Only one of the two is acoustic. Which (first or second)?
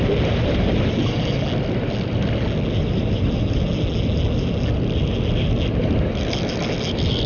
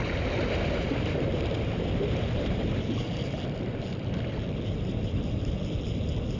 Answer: first